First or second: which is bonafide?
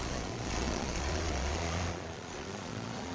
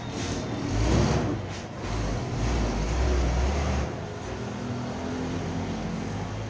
second